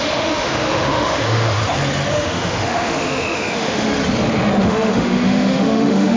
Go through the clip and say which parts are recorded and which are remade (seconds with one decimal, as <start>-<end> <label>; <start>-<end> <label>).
0.0-1.6 remade; 1.6-2.1 recorded; 2.1-3.9 remade; 3.9-4.6 recorded; 4.6-6.2 remade